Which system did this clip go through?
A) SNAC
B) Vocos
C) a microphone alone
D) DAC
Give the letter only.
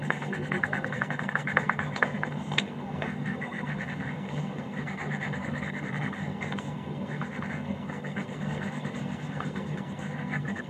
A